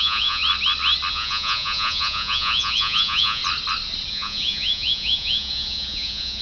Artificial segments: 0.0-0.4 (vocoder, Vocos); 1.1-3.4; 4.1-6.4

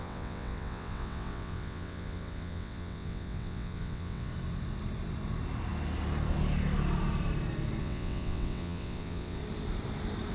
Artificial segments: 0.0-4.3 (vocoder, WaveNeXt); 7.8-9.4

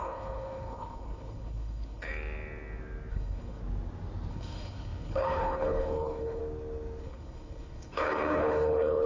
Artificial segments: 0.0-2.1 (codec, HILCodec); 3.1-3.6; 4.3-6.4; 7.0-9.1

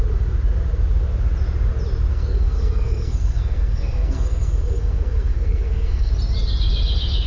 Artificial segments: 2.1-6.1 (codec, SNAC)